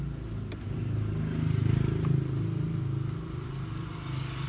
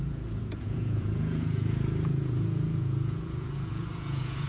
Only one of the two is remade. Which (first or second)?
second